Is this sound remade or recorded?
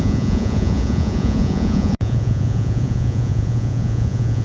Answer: remade